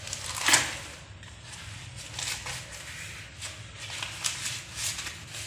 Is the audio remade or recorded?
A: recorded